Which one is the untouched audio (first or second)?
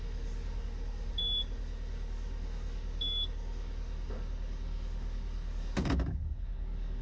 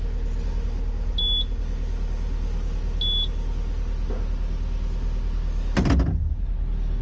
second